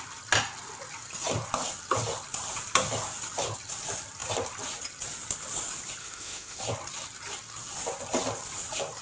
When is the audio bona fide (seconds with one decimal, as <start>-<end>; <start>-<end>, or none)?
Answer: 0.0-6.0; 6.6-9.0

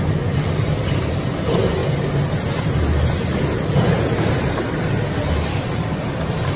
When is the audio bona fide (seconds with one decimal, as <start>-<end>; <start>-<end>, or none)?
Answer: 0.0-6.6

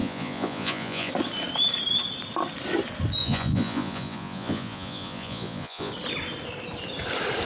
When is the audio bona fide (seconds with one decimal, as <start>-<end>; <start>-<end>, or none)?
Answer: 1.1-3.2; 5.9-7.5

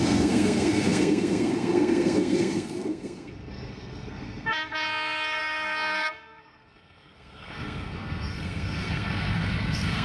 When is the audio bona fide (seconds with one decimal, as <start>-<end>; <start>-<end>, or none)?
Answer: none